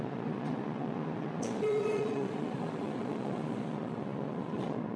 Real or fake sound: fake